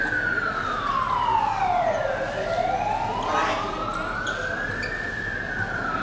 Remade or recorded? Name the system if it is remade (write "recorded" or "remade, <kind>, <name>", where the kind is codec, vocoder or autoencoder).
recorded